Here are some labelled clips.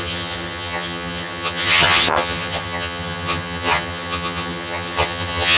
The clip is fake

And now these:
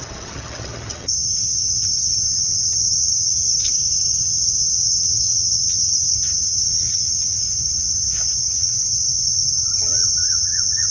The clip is fake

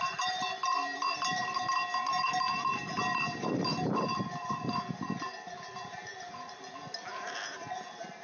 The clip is real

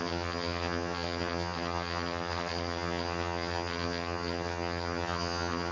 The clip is fake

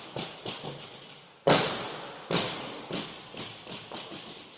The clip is real